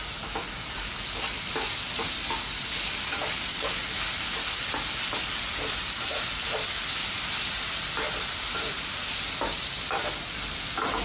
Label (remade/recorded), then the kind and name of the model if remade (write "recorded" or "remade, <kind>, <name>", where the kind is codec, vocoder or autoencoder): recorded